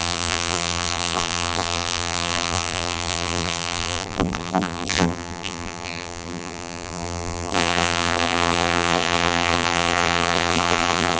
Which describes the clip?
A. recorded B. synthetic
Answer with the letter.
B